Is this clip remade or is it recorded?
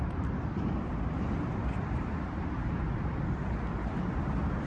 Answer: remade